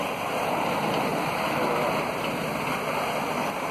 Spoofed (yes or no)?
no